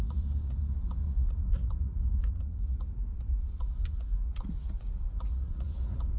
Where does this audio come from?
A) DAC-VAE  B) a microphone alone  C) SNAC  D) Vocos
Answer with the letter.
D